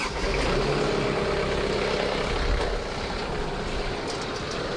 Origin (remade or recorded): recorded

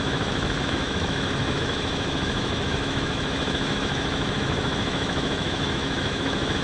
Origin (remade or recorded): remade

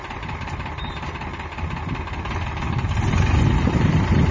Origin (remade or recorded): remade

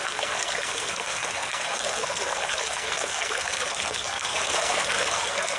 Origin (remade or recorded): remade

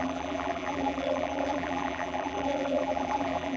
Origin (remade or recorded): remade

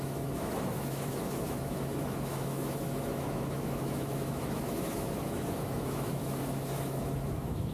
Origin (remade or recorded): remade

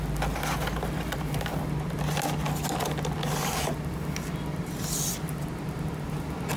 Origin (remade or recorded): recorded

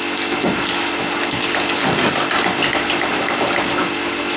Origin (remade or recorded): recorded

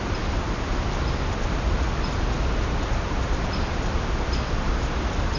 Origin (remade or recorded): recorded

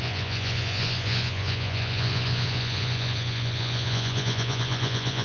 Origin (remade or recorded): remade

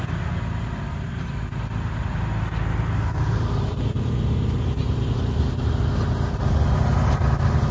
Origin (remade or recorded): recorded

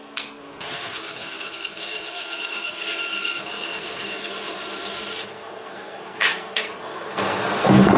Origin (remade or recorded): remade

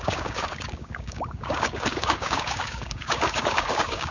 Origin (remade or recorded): remade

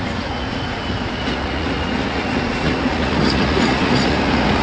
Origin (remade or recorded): remade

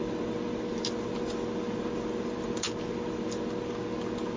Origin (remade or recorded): recorded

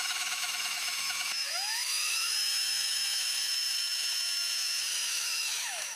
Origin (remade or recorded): remade